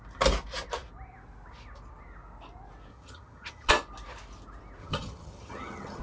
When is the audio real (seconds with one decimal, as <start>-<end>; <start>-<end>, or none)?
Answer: 0.0-2.9; 3.7-4.8

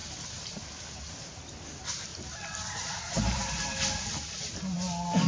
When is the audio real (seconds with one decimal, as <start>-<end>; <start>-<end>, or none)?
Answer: 0.0-2.1

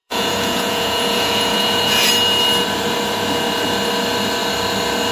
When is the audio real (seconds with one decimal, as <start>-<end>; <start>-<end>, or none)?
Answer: 2.1-5.1

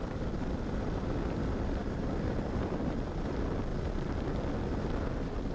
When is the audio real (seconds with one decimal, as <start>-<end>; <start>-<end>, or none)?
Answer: 3.7-5.5

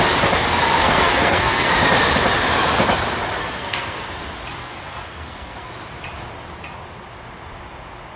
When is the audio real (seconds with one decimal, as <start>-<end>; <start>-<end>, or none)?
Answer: 0.0-0.8; 1.7-3.4; 4.1-4.6; 5.7-8.2

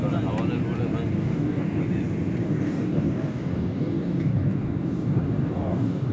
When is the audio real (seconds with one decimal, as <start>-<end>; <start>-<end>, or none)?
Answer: 0.0-1.2; 1.8-2.4

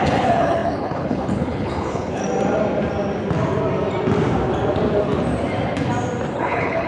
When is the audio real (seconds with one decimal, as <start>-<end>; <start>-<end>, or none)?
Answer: 2.2-6.3